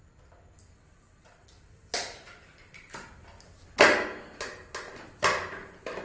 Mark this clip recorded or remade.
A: recorded